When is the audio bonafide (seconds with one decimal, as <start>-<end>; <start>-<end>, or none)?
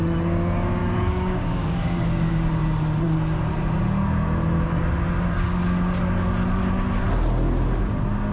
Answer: 0.0-0.8; 2.6-8.3